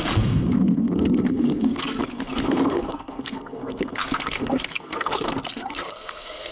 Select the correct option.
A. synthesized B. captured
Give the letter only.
A